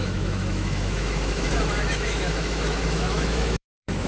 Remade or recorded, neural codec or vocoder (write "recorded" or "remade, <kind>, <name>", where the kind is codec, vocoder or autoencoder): remade, autoencoder, DAC-VAE